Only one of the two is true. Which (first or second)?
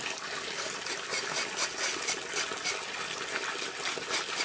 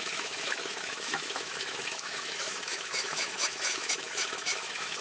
first